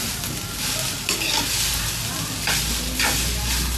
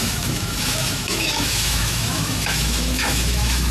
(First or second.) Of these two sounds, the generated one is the second